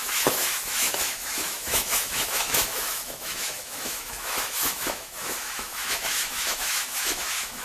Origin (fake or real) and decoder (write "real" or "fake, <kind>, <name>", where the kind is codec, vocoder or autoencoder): fake, autoencoder, DAC-VAE